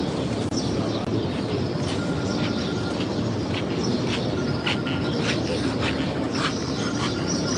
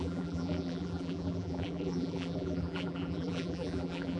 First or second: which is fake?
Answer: second